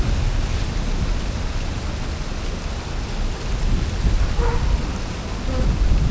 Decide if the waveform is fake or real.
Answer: real